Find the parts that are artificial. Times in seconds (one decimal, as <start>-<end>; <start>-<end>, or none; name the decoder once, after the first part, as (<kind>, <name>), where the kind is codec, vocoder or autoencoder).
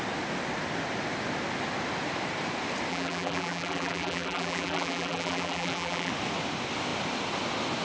2.9-6.1 (vocoder, BigVGAN v2)